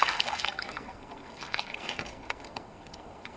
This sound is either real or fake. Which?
fake